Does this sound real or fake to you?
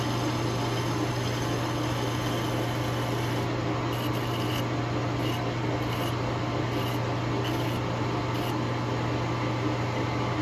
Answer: real